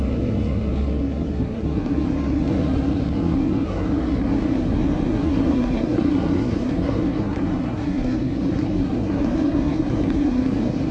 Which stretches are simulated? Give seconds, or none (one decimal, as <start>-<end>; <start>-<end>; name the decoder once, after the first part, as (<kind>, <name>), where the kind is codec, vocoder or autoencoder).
0.0-10.9 (codec, SNAC)